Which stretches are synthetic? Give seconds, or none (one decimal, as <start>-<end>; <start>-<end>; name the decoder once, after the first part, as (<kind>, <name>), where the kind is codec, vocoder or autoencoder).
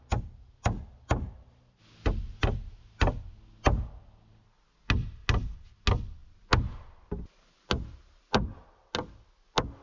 none